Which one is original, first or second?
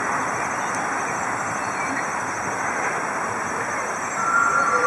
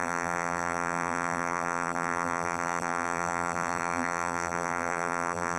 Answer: first